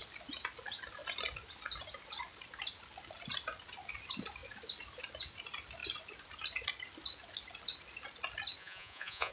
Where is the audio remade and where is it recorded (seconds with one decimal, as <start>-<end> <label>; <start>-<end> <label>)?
0.0-8.6 recorded; 8.6-9.3 remade